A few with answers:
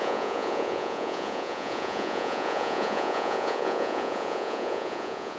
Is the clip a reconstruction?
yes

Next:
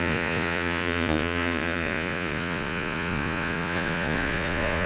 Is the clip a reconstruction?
yes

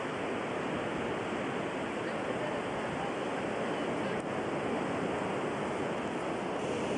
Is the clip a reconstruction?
no